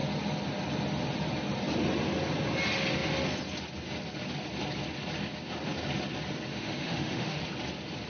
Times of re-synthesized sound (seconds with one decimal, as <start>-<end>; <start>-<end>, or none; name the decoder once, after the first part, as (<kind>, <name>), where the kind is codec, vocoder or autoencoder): 6.5-7.4 (autoencoder, DAC-VAE)